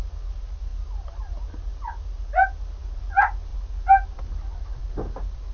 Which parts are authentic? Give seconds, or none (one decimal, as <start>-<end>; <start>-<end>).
0.0-5.5